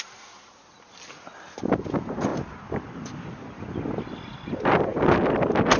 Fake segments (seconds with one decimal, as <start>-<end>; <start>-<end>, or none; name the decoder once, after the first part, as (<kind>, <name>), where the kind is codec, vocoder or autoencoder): 2.3-3.7 (vocoder, BigVGAN v2)